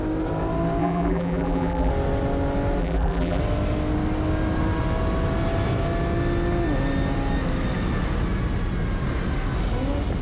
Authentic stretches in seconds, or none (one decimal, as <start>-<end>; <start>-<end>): 0.0-0.8; 1.9-2.8; 3.4-10.2